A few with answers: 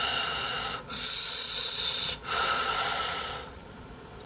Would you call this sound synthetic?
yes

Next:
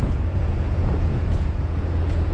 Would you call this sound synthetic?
yes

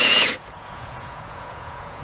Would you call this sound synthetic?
yes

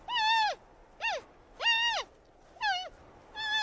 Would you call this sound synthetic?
no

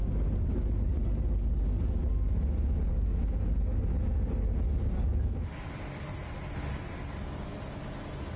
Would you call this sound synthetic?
no